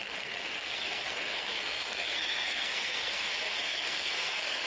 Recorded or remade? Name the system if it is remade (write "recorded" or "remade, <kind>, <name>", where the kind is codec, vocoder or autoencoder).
remade, codec, SNAC